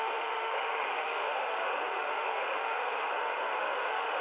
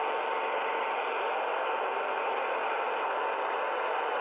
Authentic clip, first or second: second